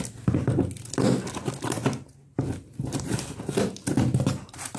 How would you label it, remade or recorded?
recorded